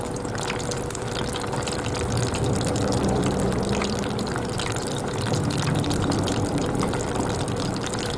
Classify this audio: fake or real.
fake